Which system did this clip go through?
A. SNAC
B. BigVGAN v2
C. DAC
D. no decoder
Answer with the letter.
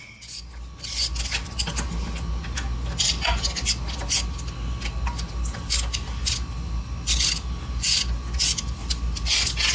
D